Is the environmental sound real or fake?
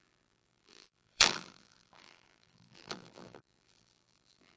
fake